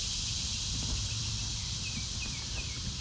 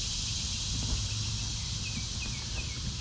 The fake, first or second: first